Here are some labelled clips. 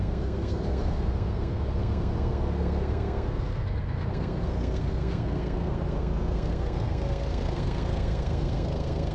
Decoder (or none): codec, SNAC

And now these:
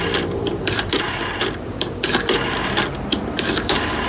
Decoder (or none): vocoder, BigVGAN v2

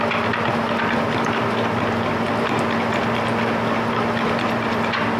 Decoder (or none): none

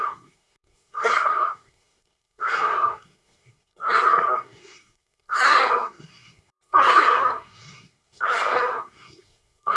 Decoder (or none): codec, SNAC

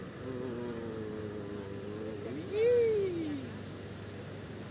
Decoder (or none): none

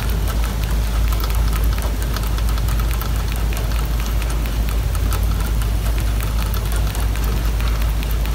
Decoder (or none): none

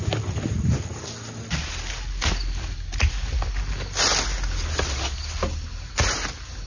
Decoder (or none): none